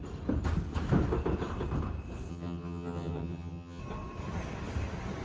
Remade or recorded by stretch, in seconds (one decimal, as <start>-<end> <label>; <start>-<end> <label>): 0.0-2.3 recorded; 2.3-3.8 remade; 3.8-5.2 recorded